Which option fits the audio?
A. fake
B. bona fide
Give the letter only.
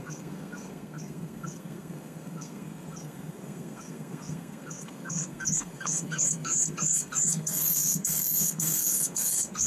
A